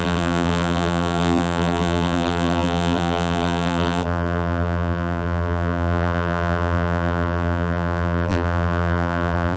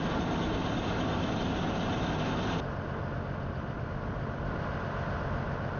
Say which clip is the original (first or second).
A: second